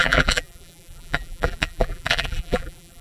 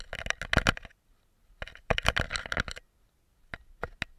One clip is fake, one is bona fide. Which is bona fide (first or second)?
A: second